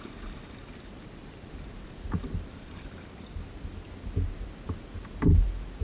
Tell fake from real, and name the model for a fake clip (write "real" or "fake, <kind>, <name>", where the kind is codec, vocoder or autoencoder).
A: real